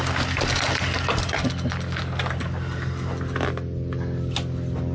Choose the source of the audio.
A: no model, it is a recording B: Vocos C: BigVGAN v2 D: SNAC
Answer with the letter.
A